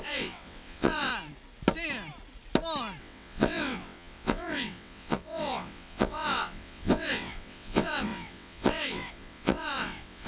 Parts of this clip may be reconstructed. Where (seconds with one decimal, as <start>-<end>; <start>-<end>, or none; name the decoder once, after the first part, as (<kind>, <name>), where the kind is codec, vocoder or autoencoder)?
0.0-1.1 (vocoder, WaveNeXt); 3.0-10.3